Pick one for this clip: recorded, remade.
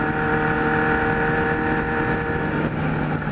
recorded